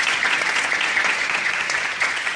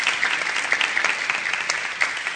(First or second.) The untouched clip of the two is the second